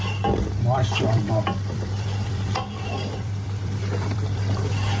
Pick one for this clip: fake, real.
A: fake